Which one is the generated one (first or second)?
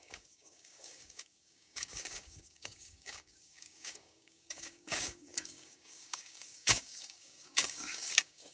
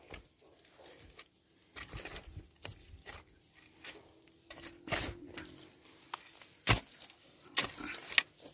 first